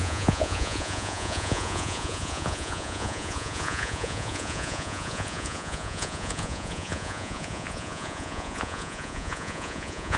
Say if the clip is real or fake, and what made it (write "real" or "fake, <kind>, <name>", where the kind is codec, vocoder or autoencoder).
fake, vocoder, Vocos